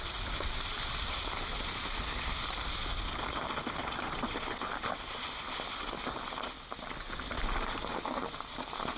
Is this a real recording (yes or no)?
yes